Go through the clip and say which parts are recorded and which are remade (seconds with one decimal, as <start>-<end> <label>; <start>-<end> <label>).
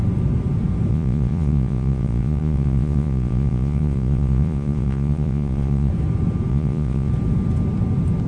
0.0-0.9 recorded; 0.9-5.9 remade; 5.9-6.5 recorded; 6.5-7.1 remade; 7.1-8.3 recorded